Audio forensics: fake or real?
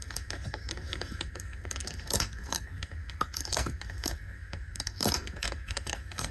fake